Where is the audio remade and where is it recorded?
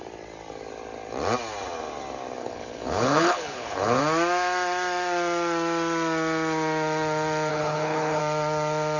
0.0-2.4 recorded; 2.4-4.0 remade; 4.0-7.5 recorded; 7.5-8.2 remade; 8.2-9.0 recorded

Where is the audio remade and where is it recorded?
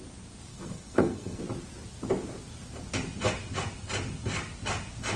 0.0-0.5 recorded; 0.5-1.4 remade; 1.4-5.2 recorded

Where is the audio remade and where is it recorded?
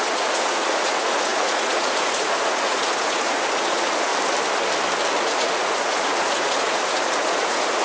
0.0-4.1 remade; 4.1-5.2 recorded; 5.2-7.8 remade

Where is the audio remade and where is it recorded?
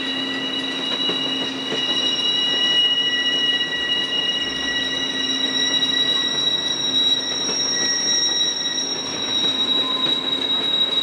0.0-9.1 recorded; 9.1-10.0 remade; 10.0-11.0 recorded